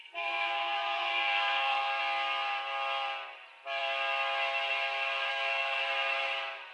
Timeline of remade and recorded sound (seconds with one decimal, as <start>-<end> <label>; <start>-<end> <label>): 0.0-2.0 remade; 2.0-5.3 recorded; 5.3-5.8 remade; 5.8-6.7 recorded